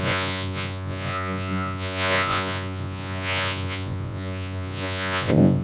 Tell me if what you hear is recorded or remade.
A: remade